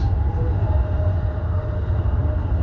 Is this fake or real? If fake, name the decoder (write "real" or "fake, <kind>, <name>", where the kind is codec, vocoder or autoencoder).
real